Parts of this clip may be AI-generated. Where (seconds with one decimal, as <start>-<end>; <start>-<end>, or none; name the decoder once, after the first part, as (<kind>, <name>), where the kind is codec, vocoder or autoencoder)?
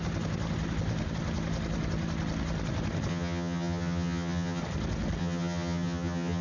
3.1-4.6 (vocoder, HiFi-GAN); 5.2-6.4